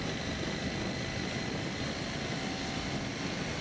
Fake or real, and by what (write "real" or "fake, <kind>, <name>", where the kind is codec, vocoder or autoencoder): real